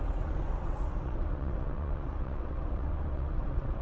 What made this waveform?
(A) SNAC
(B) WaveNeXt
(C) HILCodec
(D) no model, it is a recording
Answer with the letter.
B